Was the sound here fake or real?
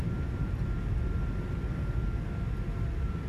real